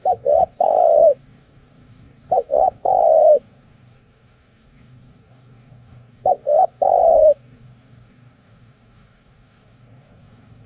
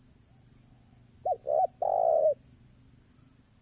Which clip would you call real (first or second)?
second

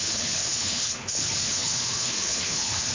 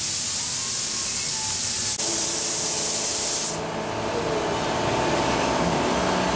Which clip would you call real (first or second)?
second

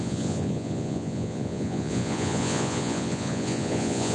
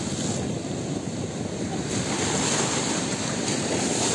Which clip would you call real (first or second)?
second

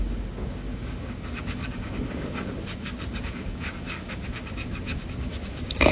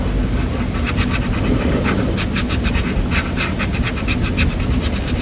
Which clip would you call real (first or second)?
second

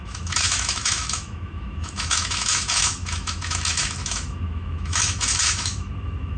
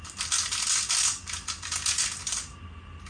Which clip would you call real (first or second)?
second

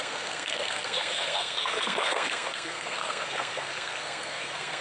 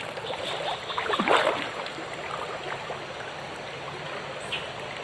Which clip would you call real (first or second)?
second